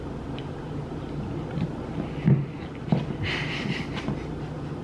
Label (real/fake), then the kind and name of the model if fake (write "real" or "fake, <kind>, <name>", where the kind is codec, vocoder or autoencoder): real